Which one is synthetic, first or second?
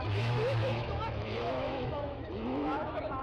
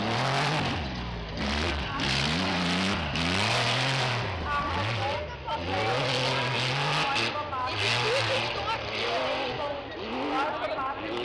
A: first